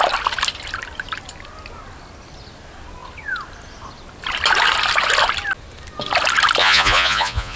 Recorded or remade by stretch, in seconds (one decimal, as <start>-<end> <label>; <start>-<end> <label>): 0.0-6.6 recorded; 6.6-7.6 remade